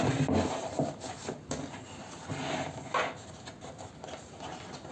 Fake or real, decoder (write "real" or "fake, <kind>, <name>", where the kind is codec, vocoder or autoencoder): real